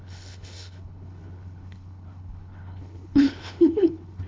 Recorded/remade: remade